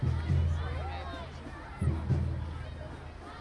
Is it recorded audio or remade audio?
recorded